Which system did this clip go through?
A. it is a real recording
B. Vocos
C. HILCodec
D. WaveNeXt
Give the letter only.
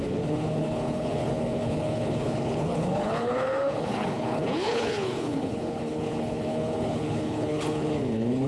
C